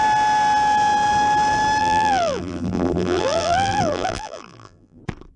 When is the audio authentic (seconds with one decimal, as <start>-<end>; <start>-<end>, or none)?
0.0-1.8; 5.0-5.4